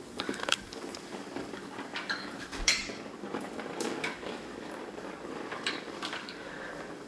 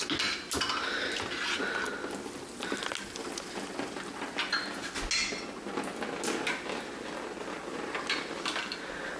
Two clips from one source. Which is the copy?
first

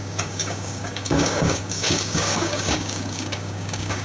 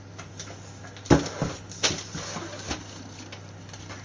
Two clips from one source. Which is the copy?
first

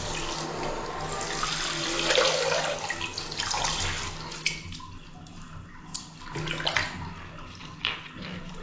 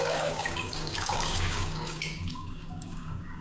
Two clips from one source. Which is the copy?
second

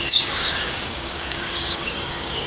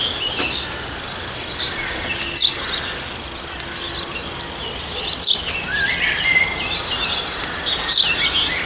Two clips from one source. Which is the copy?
first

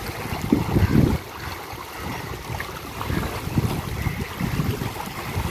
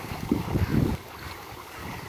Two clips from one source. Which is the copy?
second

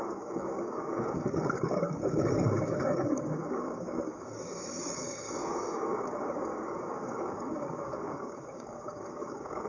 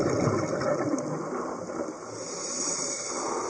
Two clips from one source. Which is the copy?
first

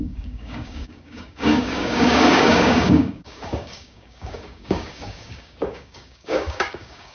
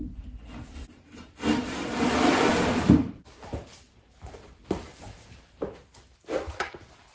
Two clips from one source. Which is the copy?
first